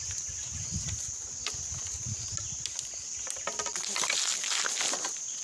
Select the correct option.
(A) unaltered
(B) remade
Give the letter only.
A